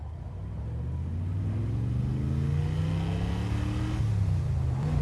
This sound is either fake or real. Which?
real